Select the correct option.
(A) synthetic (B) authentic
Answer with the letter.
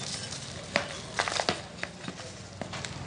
B